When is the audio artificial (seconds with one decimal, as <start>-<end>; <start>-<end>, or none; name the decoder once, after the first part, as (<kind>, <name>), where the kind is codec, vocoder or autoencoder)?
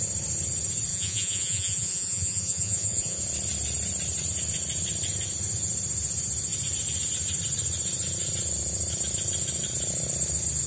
0.9-3.2 (vocoder, Vocos)